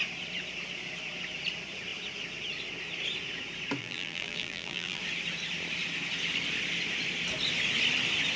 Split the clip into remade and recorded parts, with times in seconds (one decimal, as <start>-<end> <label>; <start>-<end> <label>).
0.0-3.8 recorded; 3.8-5.0 remade; 5.0-8.4 recorded